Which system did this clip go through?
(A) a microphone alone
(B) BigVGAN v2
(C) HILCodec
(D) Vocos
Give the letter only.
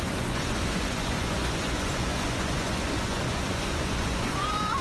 D